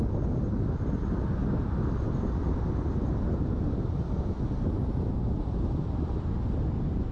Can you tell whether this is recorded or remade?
recorded